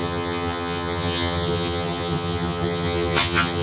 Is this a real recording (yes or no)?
no